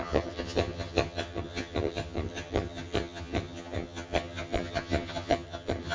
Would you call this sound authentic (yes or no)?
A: no